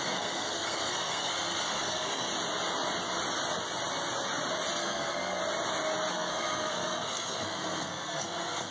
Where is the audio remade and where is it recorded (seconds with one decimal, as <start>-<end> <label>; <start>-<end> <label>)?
0.0-2.3 remade; 2.3-4.8 recorded; 4.8-5.4 remade; 5.4-6.1 recorded; 6.1-8.7 remade